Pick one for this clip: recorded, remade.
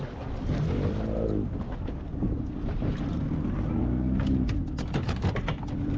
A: recorded